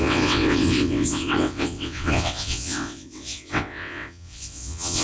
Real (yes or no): no